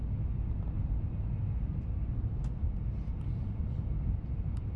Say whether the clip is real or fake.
real